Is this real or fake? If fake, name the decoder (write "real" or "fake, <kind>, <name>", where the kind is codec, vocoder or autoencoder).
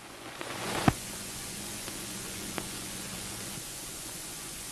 fake, vocoder, Vocos